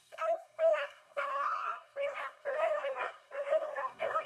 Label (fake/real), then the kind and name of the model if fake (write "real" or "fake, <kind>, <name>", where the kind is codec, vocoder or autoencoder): fake, codec, SNAC